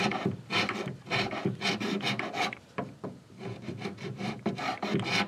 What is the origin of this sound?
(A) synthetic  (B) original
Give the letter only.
A